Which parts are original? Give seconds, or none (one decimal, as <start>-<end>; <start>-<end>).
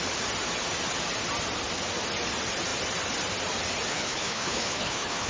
0.0-3.9